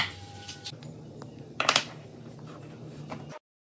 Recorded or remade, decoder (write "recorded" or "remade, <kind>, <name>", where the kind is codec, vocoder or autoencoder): remade, vocoder, BigVGAN v2